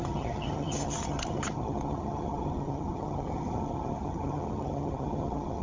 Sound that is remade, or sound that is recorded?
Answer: remade